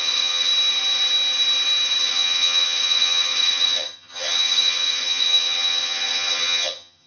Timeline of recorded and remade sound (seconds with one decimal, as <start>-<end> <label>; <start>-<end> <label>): 0.0-0.5 remade; 0.5-2.0 recorded; 2.0-7.1 remade